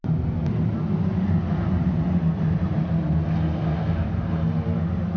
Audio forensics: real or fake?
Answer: real